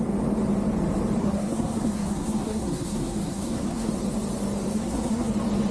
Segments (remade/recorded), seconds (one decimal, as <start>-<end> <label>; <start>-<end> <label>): 0.0-1.2 recorded; 1.2-3.9 remade; 3.9-4.7 recorded; 4.7-5.3 remade; 5.3-5.7 recorded